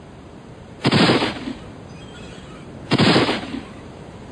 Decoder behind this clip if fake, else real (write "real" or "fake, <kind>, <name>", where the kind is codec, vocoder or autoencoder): fake, vocoder, BigVGAN v2